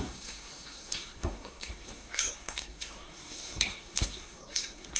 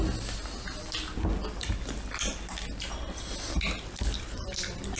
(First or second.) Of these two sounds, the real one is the second